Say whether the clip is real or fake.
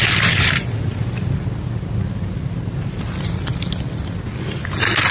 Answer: real